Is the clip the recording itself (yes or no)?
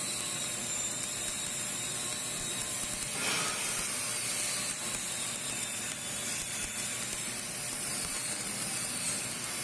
no